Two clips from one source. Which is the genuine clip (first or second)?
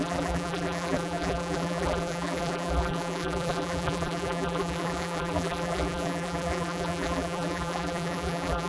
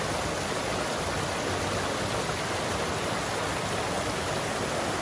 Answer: second